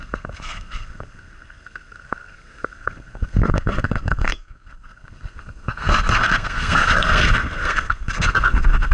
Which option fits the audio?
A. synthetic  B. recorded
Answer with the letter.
A